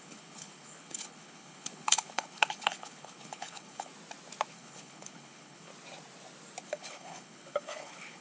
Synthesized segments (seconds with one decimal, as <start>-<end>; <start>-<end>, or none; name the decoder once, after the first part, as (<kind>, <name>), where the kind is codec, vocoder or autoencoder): 0.0-3.9 (codec, HILCodec); 4.5-5.7; 6.6-8.2